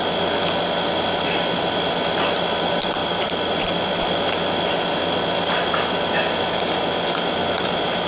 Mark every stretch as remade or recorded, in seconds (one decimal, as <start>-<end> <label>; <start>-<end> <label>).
0.0-3.0 recorded; 3.0-6.2 remade; 6.2-8.1 recorded

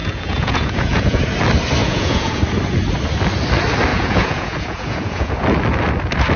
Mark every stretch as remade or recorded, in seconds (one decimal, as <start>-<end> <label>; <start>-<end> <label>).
0.0-1.2 remade; 1.2-1.8 recorded; 1.8-2.4 remade; 2.4-3.9 recorded; 3.9-5.3 remade; 5.3-6.4 recorded

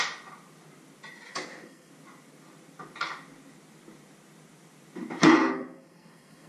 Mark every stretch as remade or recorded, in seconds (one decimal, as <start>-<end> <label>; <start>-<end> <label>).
0.0-1.3 recorded; 1.3-1.9 remade; 1.9-5.2 recorded; 5.2-6.5 remade

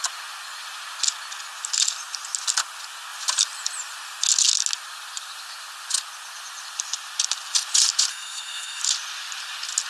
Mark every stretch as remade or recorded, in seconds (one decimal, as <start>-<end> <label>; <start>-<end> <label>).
0.0-8.1 recorded; 8.1-8.8 remade; 8.8-9.9 recorded

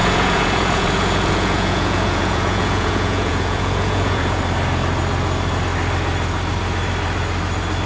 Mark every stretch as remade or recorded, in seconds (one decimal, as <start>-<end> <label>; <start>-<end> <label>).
0.0-4.4 remade; 4.4-7.9 recorded

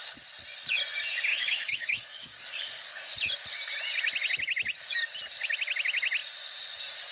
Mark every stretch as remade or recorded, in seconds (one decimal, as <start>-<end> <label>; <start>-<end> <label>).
0.0-1.3 recorded; 1.3-3.2 remade; 3.2-7.1 recorded

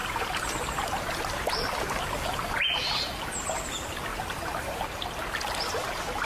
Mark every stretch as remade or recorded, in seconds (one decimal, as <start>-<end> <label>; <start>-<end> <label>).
0.0-0.5 remade; 0.5-4.1 recorded; 4.1-5.0 remade; 5.0-6.3 recorded